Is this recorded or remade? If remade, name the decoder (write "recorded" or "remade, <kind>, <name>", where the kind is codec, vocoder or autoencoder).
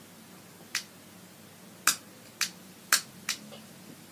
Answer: recorded